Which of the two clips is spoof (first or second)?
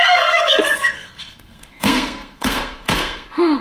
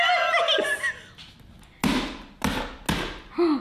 first